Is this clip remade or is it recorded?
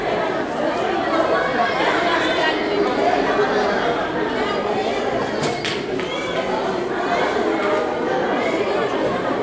recorded